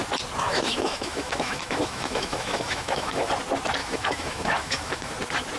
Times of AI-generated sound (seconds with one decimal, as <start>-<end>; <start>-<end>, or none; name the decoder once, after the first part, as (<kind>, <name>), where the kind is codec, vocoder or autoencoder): 0.5-3.3 (autoencoder, DAC-VAE); 3.8-5.1